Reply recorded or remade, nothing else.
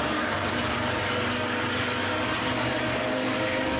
remade